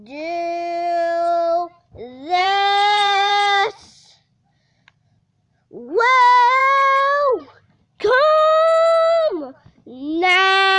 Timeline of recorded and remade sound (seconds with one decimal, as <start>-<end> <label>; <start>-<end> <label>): 0.0-2.4 recorded; 2.4-3.7 remade; 3.7-10.8 recorded